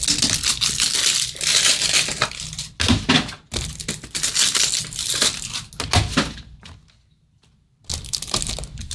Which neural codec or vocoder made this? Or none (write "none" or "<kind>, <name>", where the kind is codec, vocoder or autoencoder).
none